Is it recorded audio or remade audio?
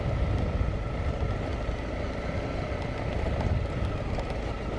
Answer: recorded